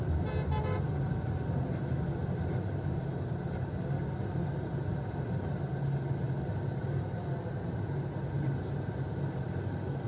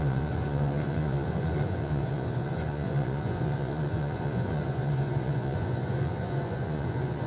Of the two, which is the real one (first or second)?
first